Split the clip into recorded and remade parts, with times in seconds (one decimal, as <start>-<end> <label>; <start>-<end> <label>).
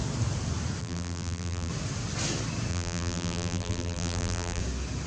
0.0-0.8 recorded; 0.8-1.7 remade; 1.7-2.7 recorded; 2.7-4.6 remade; 4.6-5.1 recorded